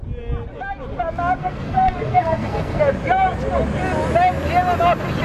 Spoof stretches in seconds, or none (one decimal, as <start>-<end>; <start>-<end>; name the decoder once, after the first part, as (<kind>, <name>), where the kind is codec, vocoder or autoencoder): 1.4-2.8 (codec, SNAC)